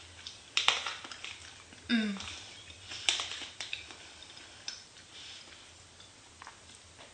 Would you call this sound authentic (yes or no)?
yes